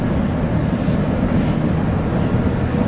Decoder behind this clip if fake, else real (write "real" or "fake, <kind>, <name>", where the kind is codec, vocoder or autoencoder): real